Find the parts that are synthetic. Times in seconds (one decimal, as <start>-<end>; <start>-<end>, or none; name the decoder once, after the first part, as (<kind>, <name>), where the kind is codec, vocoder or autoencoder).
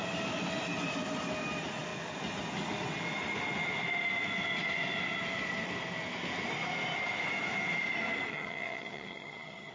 8.3-9.7 (vocoder, HiFi-GAN)